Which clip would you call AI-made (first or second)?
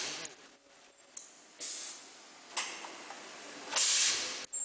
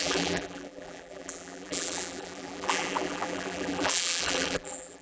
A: second